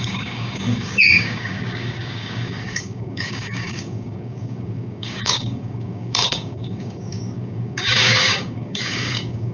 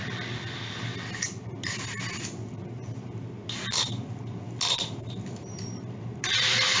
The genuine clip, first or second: second